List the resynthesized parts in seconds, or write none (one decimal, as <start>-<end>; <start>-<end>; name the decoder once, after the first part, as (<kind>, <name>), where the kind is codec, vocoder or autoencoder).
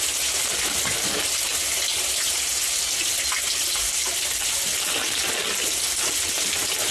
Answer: none